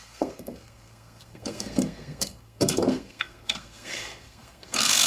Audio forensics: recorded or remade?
remade